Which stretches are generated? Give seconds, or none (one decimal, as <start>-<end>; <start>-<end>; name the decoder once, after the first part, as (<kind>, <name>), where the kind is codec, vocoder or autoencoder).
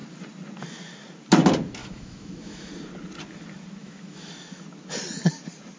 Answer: 1.8-2.7 (autoencoder, DAC-VAE); 3.8-4.3